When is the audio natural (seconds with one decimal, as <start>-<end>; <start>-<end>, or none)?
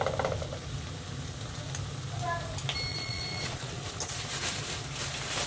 0.0-2.9; 3.8-5.5